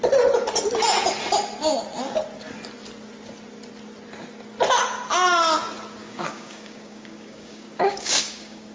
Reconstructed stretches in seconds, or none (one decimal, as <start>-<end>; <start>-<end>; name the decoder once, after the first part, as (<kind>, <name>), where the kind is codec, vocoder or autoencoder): 6.0-8.7 (codec, DAC)

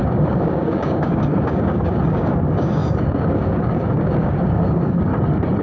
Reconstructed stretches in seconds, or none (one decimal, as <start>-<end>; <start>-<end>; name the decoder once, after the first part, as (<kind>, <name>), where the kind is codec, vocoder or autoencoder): 0.0-5.1 (codec, DAC)

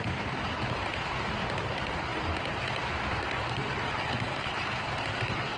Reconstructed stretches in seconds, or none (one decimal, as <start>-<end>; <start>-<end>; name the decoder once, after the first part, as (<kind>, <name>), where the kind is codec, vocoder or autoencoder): none

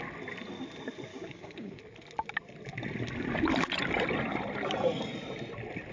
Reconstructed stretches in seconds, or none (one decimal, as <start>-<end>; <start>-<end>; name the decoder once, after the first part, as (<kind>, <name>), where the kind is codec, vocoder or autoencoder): 1.1-1.8 (codec, DAC)

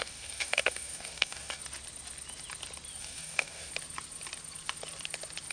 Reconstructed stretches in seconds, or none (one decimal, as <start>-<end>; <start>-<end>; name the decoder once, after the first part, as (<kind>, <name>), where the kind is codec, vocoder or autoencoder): 0.0-1.6 (codec, DAC); 3.0-3.7

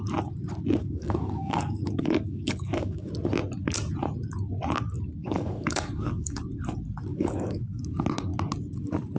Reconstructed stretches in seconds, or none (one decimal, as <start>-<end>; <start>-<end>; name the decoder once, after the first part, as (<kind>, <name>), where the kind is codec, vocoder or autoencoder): 0.8-3.1 (codec, DAC); 5.2-6.4; 7.1-7.8